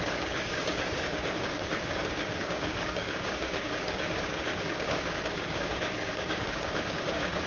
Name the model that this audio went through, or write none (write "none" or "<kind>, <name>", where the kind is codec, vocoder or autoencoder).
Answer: codec, DAC